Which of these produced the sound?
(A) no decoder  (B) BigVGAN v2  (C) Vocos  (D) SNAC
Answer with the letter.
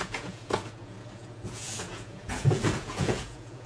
C